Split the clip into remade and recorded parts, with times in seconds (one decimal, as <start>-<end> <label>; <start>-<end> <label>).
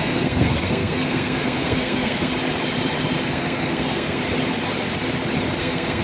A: 0.0-2.3 remade; 2.3-3.2 recorded; 3.2-4.2 remade; 4.2-5.6 recorded; 5.6-6.0 remade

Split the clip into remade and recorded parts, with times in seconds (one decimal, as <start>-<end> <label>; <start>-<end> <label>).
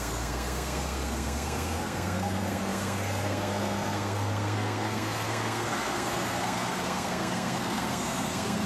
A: 0.0-8.7 remade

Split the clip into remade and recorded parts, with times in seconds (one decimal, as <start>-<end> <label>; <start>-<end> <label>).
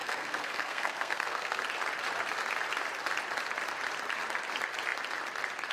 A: 0.0-1.6 remade; 1.6-5.7 recorded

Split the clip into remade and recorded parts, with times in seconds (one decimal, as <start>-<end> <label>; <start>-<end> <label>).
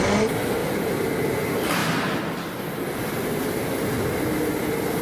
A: 0.0-5.0 recorded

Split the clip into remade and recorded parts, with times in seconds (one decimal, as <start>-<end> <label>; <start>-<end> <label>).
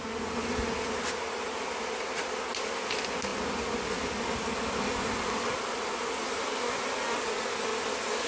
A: 0.0-8.3 recorded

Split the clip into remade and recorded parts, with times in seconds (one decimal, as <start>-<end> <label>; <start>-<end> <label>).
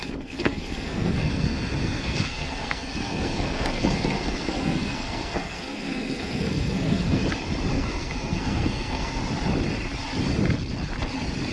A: 0.0-7.2 remade; 7.2-7.7 recorded; 7.7-9.2 remade; 9.2-11.5 recorded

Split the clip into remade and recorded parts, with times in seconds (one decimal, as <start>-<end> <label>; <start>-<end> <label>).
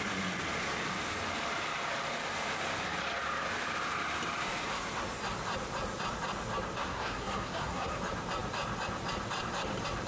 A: 0.0-6.8 recorded; 6.8-8.0 remade; 8.0-10.1 recorded